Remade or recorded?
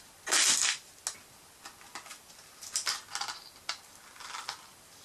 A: recorded